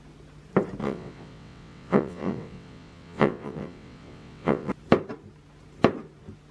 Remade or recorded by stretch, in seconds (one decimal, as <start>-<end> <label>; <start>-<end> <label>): 0.0-0.8 recorded; 0.8-4.7 remade; 4.7-6.5 recorded